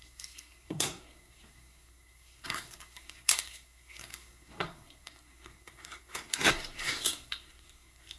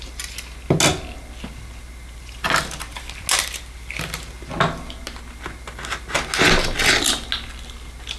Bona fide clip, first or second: second